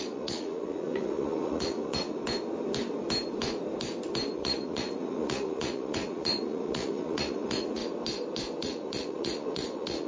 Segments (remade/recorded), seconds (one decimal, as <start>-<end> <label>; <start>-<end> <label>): 0.0-2.2 remade; 2.2-4.3 recorded; 4.3-7.8 remade; 7.8-8.6 recorded; 8.6-10.1 remade